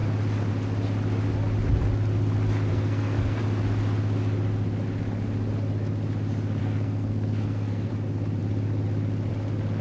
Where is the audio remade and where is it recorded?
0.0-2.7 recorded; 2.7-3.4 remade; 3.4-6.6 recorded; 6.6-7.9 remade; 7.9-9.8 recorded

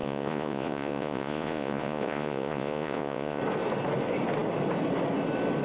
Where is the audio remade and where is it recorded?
0.0-3.4 remade; 3.4-5.6 recorded

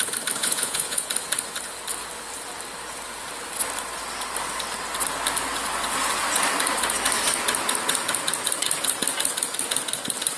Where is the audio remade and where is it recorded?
0.0-0.4 recorded; 0.4-1.1 remade; 1.1-10.4 recorded

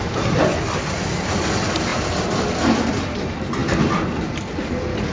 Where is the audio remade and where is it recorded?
0.0-1.9 recorded; 1.9-2.9 remade; 2.9-3.6 recorded; 3.6-5.1 remade

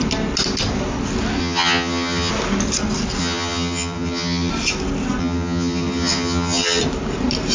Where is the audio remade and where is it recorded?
0.0-1.4 recorded; 1.4-2.3 remade; 2.3-3.2 recorded; 3.2-4.5 remade; 4.5-5.2 recorded; 5.2-6.8 remade; 6.8-7.5 recorded